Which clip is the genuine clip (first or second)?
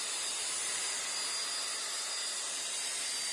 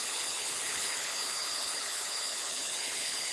first